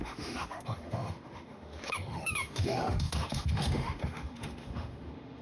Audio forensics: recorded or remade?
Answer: remade